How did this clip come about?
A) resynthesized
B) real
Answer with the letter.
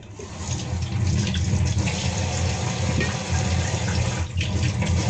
B